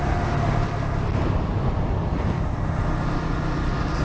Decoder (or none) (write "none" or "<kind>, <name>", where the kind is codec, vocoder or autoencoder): none